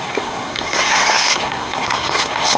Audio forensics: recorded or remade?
remade